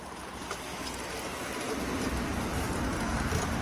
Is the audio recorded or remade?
recorded